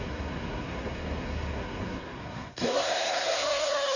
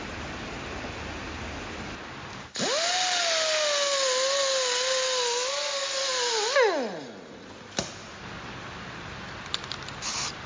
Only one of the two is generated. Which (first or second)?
first